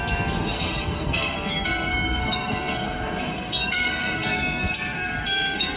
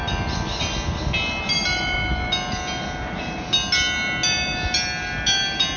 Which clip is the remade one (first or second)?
first